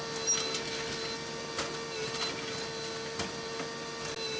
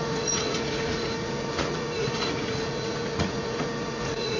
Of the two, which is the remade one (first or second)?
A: second